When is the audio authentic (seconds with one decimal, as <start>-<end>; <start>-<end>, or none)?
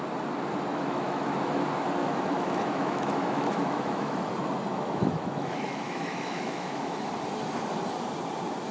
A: 0.0-0.7; 1.4-2.0; 4.3-4.7; 7.1-8.7